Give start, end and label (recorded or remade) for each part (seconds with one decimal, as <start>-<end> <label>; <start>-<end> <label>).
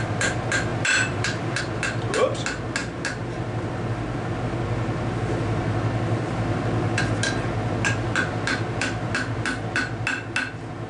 0.0-0.7 recorded; 0.7-1.6 remade; 1.6-10.9 recorded